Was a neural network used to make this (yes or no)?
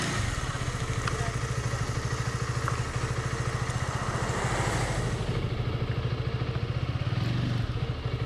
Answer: no